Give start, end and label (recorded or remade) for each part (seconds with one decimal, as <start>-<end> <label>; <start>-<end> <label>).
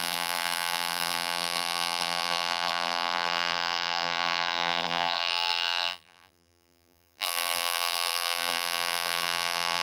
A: 0.0-9.8 remade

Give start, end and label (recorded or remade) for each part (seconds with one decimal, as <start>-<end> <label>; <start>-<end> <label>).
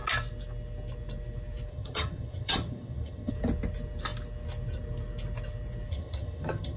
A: 0.0-1.7 recorded; 1.7-3.3 remade; 3.3-5.9 recorded; 5.9-6.8 remade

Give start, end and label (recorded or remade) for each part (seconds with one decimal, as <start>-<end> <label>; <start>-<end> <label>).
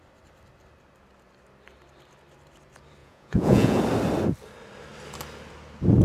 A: 0.0-3.0 recorded; 3.0-3.8 remade; 3.8-6.0 recorded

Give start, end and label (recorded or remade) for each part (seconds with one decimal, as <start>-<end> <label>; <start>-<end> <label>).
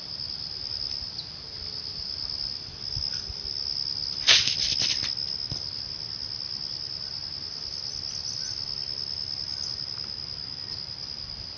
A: 0.0-11.6 recorded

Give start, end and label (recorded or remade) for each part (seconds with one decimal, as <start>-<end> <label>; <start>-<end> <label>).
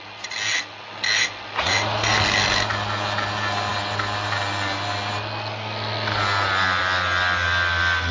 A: 0.0-8.1 recorded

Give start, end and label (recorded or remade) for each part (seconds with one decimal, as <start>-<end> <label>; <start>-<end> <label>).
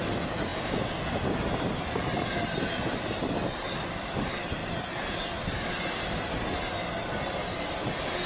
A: 0.0-8.3 recorded